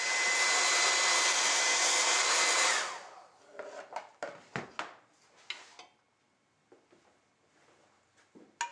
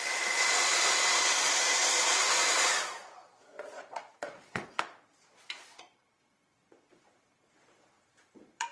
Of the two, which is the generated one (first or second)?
second